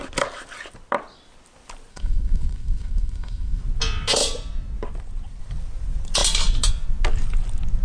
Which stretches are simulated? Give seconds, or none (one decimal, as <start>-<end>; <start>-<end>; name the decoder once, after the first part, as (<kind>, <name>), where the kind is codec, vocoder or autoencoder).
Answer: 1.9-3.6 (codec, SNAC)